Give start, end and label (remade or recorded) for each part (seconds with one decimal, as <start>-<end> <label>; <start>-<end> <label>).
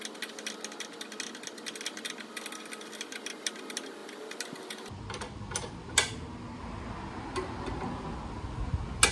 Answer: 0.0-9.1 recorded